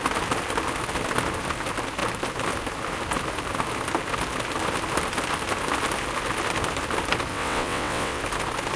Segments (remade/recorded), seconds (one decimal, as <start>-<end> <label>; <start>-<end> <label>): 0.0-7.3 recorded; 7.3-8.2 remade; 8.2-8.8 recorded